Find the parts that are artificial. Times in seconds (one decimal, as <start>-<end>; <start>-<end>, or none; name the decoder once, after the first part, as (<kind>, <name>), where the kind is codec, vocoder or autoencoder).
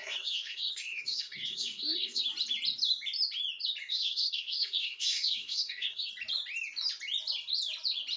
0.0-2.2 (codec, SNAC); 3.9-6.1